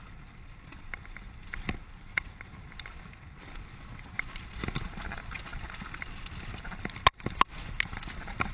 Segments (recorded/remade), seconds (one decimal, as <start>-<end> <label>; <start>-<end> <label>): 0.0-8.5 recorded